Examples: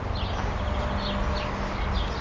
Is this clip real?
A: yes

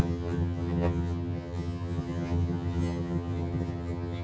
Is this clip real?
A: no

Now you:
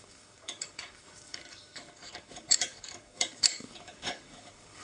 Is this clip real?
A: no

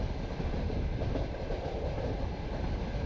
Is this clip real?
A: yes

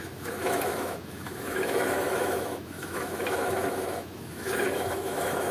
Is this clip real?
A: no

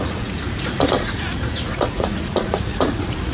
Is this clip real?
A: no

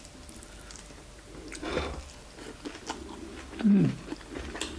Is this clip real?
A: yes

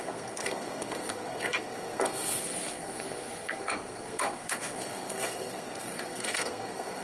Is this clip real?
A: no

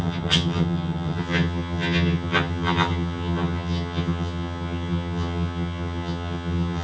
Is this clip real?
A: no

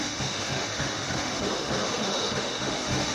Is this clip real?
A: no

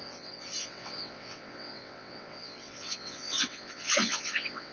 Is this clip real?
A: no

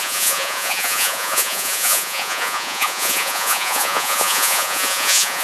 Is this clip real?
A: no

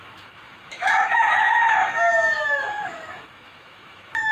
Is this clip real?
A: no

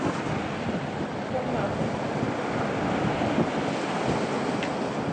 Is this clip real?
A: yes